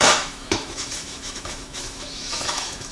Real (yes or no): no